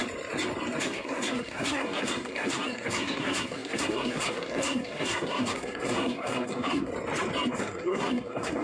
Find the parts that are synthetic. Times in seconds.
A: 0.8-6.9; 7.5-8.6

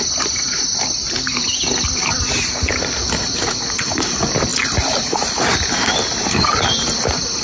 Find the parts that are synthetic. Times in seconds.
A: none

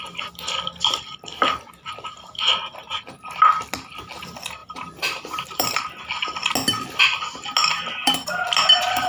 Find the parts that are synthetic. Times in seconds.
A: 4.6-5.8; 8.0-9.1

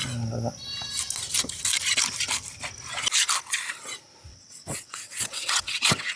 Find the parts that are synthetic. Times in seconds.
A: 4.3-6.2

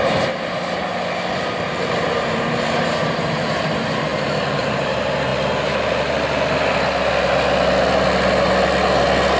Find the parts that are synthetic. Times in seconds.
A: 0.0-0.9; 2.1-5.3

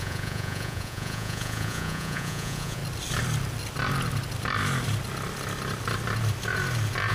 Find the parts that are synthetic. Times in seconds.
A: 0.0-2.8

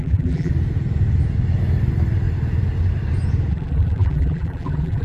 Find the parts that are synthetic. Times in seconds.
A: 0.0-0.5; 3.5-5.0

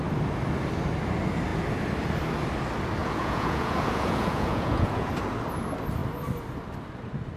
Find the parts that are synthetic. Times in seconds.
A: 3.0-5.1